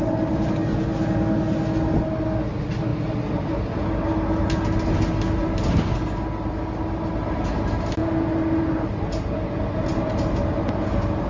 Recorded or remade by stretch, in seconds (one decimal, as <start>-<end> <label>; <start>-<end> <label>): 0.0-11.3 recorded